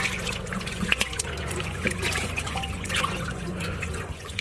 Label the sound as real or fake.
fake